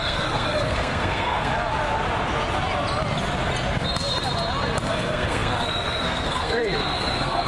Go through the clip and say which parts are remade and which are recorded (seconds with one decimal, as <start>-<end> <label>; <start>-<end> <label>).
0.0-1.5 remade; 1.5-4.9 recorded; 4.9-7.5 remade